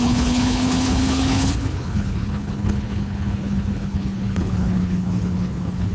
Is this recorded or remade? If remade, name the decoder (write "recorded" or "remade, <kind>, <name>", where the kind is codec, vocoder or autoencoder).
remade, codec, HILCodec